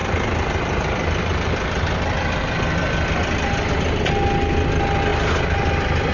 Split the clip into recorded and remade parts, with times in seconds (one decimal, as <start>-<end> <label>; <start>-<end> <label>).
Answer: 0.0-6.1 recorded